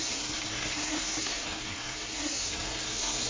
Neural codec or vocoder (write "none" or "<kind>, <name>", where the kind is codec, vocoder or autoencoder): codec, SNAC